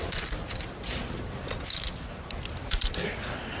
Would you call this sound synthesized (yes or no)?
yes